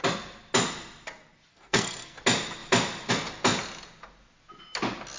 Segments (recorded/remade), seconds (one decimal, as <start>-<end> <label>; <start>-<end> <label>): 0.0-1.5 recorded; 1.5-2.2 remade; 2.2-5.2 recorded